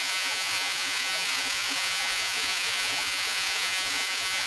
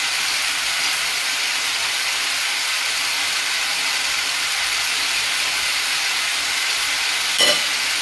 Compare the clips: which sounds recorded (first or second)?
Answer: second